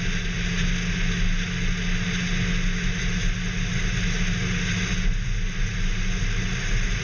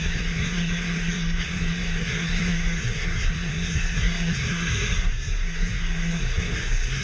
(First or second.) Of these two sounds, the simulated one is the second